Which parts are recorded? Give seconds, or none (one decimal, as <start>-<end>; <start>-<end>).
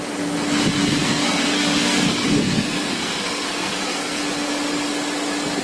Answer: 0.0-0.8; 4.2-5.6